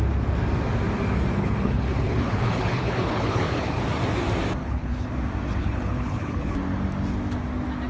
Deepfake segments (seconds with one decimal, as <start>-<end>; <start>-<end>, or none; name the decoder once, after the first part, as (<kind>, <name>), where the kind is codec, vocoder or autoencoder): 1.3-3.8 (codec, HILCodec); 4.6-5.1; 5.6-6.5